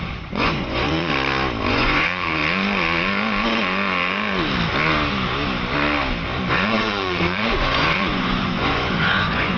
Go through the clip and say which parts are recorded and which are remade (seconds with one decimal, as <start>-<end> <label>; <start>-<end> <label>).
0.0-1.1 remade; 1.1-1.6 recorded; 1.6-2.4 remade; 2.4-6.5 recorded; 6.5-9.6 remade